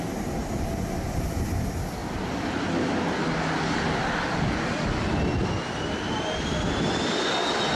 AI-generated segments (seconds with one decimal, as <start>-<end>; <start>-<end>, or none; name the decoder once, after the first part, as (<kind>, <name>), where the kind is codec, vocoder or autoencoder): none